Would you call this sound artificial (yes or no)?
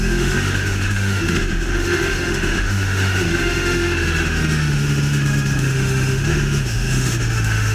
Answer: yes